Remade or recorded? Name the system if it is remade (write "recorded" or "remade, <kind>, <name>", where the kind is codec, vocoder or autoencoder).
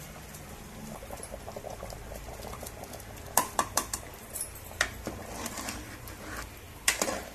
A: remade, vocoder, BigVGAN v2